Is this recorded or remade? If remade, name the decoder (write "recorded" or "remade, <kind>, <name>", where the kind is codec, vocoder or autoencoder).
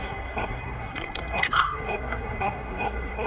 remade, codec, SNAC